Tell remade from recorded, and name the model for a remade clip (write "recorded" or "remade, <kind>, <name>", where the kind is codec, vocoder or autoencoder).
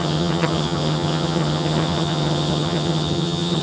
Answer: remade, vocoder, HiFi-GAN